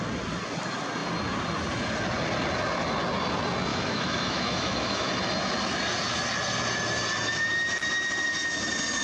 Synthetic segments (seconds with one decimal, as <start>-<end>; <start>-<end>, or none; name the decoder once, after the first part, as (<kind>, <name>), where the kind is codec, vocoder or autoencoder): 3.7-5.1 (autoencoder, DAC-VAE)